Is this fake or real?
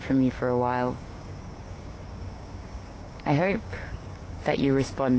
fake